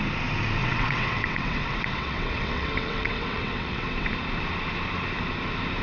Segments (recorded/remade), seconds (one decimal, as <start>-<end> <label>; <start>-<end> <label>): 0.0-0.6 recorded; 0.6-4.1 remade; 4.1-5.8 recorded